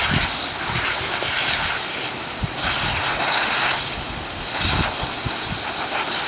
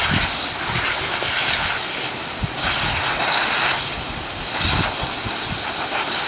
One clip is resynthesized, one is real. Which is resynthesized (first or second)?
second